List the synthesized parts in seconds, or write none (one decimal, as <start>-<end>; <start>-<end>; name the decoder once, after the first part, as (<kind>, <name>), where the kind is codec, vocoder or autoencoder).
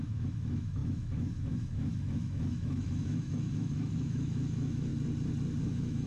0.0-4.9 (autoencoder, DAC-VAE); 5.6-6.1